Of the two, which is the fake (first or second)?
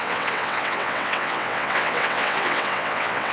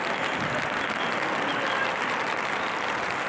first